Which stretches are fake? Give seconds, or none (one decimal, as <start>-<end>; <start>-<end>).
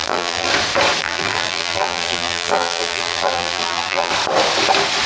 0.0-0.5; 1.0-4.1